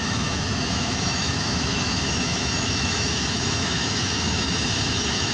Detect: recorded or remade remade